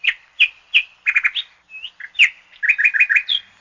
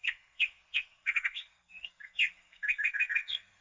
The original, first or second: first